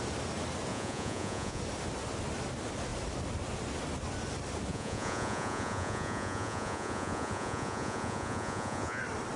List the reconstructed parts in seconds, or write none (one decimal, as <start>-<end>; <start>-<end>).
0.7-1.6; 4.7-9.0